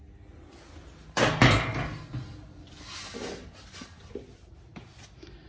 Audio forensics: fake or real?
real